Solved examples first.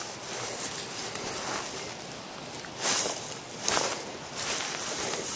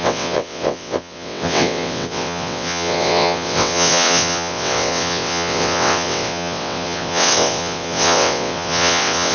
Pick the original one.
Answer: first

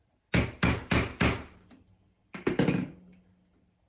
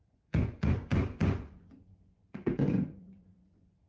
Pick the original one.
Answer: first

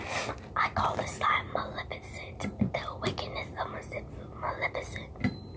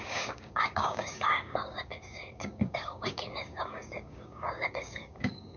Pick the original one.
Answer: first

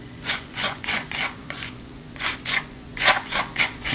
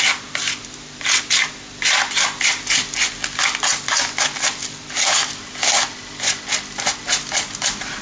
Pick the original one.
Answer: second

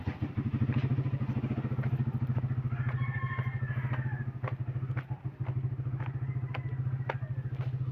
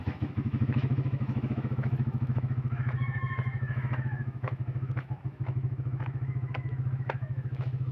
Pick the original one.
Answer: first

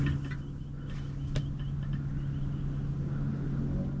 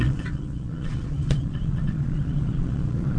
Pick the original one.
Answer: first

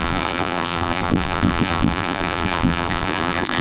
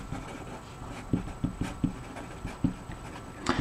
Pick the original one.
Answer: second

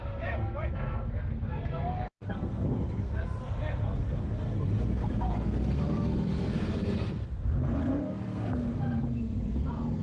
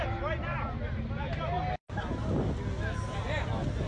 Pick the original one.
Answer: second